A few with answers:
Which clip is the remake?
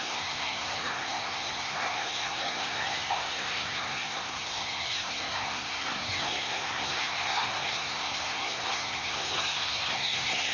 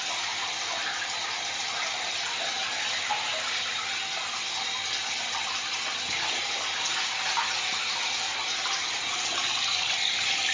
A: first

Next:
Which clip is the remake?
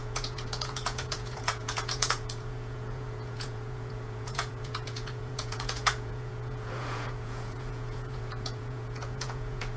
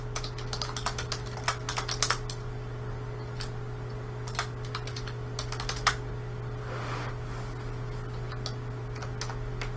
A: first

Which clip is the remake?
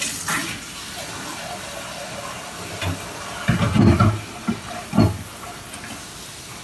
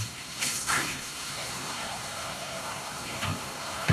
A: second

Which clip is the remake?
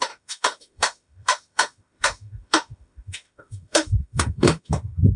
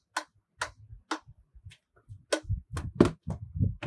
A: first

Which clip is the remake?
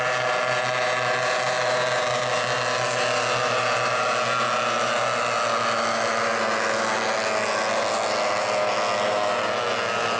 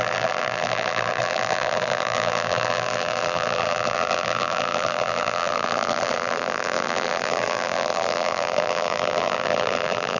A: second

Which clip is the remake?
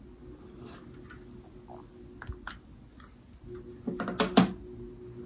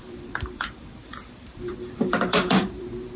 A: second